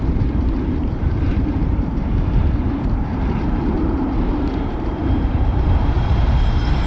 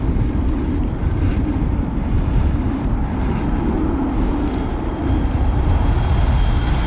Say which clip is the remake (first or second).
first